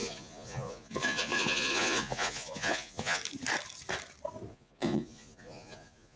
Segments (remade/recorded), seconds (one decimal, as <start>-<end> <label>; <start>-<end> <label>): 0.0-3.2 remade; 3.2-4.5 recorded; 4.5-6.2 remade